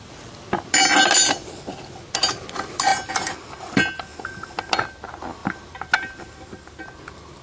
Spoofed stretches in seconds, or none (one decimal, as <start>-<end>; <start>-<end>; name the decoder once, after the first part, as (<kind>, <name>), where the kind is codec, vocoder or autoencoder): none